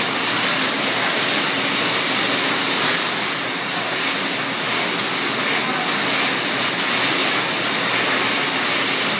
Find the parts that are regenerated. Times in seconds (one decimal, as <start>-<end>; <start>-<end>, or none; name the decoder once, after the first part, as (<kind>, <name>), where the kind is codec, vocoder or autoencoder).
none